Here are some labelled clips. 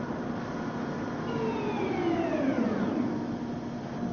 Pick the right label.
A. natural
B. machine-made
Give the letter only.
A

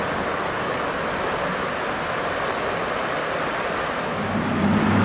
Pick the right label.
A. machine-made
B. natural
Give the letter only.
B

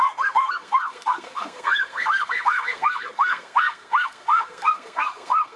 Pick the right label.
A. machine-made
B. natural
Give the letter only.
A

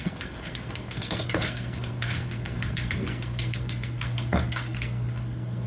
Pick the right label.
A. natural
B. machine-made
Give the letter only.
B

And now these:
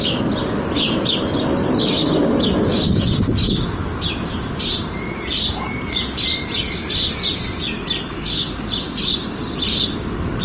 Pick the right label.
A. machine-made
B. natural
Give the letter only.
B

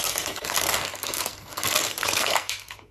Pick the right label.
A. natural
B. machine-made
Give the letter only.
B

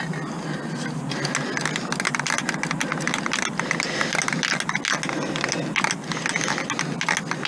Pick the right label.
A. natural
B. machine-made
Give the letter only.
A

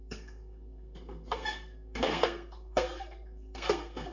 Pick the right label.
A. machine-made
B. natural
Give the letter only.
A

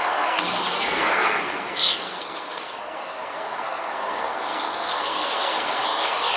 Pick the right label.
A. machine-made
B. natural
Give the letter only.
A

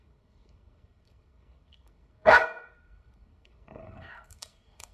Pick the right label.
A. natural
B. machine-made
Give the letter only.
B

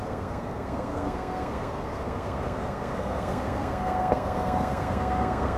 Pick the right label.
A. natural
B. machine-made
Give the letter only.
B